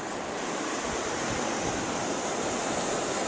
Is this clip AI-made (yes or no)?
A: no